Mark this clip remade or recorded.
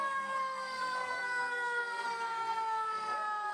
remade